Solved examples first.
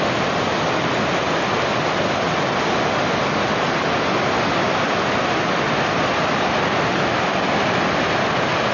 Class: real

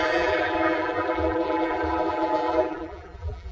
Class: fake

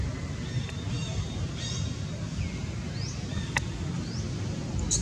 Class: real